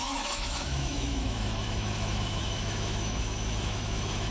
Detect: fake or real fake